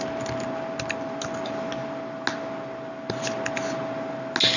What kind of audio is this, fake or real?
real